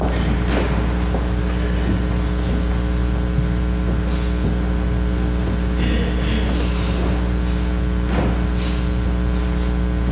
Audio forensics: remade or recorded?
recorded